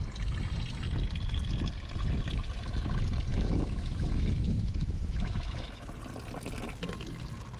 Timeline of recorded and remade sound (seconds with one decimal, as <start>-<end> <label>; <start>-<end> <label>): 0.0-3.3 recorded; 3.3-5.9 remade; 5.9-7.6 recorded